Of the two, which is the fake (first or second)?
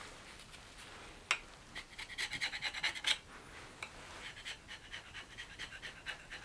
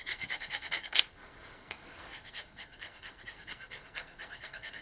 second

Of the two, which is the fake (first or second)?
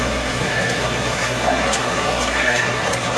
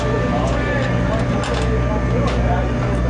first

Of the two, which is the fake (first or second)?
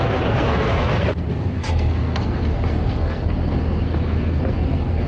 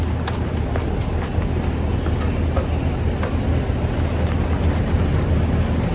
first